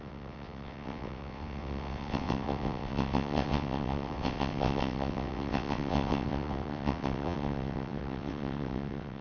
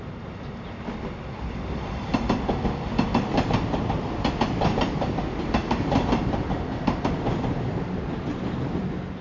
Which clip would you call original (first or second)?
second